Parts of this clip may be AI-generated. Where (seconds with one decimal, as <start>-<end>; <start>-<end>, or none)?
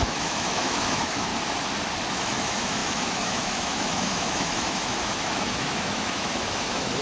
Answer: 0.0-1.3; 2.1-7.0